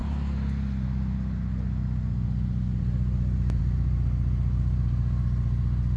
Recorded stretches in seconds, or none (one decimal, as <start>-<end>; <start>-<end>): 0.0-6.0